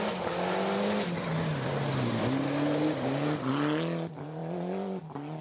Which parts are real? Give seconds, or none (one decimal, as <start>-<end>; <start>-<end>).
0.0-5.4